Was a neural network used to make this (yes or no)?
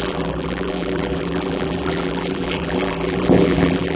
yes